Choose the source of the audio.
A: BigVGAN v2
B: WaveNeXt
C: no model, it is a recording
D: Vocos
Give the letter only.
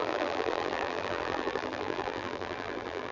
A